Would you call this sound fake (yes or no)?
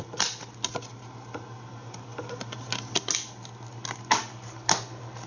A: no